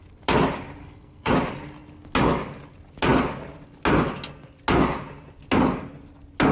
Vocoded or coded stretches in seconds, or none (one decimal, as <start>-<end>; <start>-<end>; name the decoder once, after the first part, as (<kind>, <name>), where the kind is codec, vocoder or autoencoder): 0.8-1.3 (codec, SNAC)